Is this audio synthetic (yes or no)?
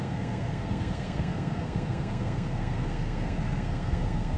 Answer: yes